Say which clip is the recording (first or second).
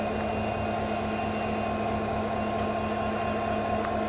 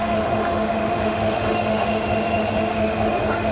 first